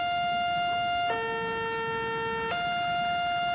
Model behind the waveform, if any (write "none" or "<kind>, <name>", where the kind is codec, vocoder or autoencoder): none